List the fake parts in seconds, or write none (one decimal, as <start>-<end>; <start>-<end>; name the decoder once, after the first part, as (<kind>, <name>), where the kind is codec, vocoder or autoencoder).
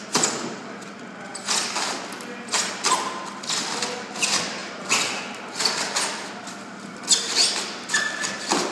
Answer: 4.6-5.2 (vocoder, BigVGAN v2)